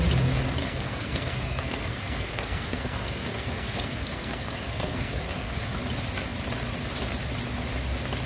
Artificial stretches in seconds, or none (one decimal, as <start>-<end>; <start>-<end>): 0.6-5.6